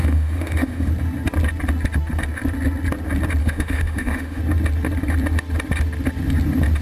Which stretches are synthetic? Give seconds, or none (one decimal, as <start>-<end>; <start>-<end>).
0.0-0.9; 3.4-4.4